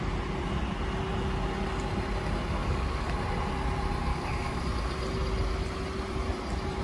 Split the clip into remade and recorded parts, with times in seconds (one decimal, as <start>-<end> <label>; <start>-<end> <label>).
0.0-2.6 recorded; 2.6-3.1 remade; 3.1-4.1 recorded; 4.1-4.6 remade; 4.6-6.8 recorded